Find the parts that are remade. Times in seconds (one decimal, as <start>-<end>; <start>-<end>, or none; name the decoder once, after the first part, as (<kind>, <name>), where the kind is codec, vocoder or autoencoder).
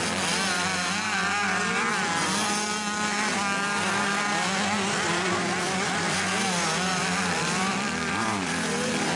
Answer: 6.9-9.2 (vocoder, BigVGAN v2)